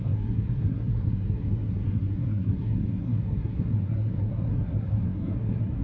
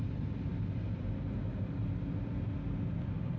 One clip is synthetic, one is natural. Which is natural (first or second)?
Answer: second